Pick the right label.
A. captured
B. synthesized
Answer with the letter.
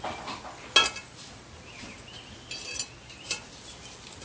A